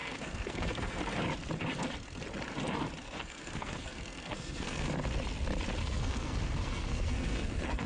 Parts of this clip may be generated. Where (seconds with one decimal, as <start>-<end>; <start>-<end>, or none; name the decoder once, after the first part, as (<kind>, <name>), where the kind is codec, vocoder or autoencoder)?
0.0-1.0 (codec, SNAC); 3.0-4.9; 5.8-7.9